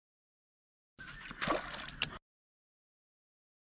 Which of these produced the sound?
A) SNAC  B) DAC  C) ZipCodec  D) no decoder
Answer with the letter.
D